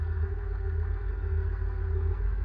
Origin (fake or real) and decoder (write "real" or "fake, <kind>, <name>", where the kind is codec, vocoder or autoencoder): fake, codec, SNAC